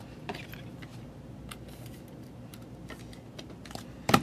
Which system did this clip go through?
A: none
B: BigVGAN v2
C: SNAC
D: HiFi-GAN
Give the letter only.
A